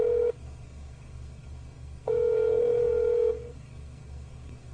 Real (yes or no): no